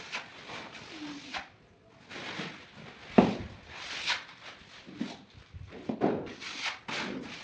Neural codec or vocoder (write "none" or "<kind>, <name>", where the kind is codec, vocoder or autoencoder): none